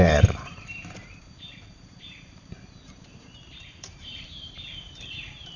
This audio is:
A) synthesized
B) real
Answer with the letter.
A